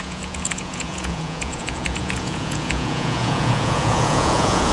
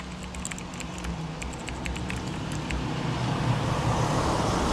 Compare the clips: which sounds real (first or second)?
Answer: second